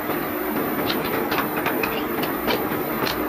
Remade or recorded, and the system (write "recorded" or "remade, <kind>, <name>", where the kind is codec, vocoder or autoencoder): recorded